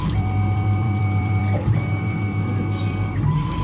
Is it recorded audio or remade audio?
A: remade